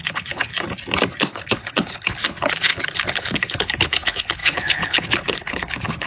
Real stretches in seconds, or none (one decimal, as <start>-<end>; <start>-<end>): 0.5-1.2